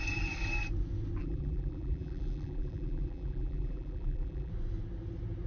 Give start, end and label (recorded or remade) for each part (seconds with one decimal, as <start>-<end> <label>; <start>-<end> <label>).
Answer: 0.0-1.2 recorded; 1.2-4.5 remade; 4.5-5.5 recorded